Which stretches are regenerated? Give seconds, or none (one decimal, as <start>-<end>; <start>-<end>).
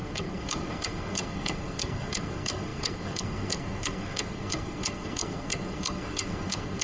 0.0-6.8